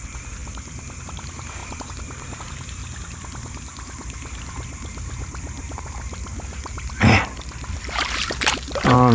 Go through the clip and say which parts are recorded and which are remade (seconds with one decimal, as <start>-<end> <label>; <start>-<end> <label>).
0.0-2.8 remade; 2.8-5.6 recorded; 5.6-9.1 remade